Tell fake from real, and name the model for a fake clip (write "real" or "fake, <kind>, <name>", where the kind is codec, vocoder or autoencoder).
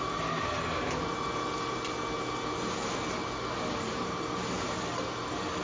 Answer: real